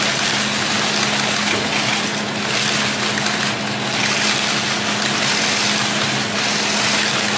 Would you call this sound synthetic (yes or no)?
no